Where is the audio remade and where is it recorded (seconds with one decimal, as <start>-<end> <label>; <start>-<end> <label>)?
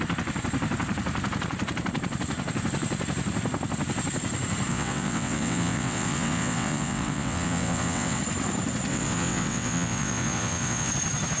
0.0-4.7 recorded; 4.7-8.2 remade; 8.2-8.9 recorded; 8.9-10.9 remade; 10.9-11.4 recorded